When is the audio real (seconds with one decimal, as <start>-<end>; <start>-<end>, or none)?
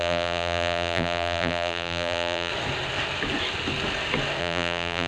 2.5-4.4